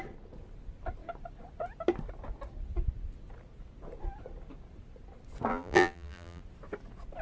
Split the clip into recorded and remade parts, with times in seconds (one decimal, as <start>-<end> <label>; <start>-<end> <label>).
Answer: 0.0-5.5 recorded; 5.5-6.4 remade; 6.4-7.2 recorded